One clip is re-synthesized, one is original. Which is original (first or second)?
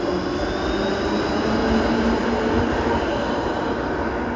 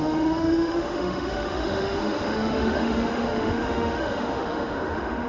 first